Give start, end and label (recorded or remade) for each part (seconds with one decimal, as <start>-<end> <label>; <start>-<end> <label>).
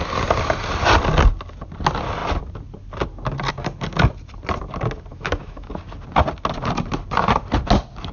0.0-5.1 recorded; 5.1-5.7 remade; 5.7-8.1 recorded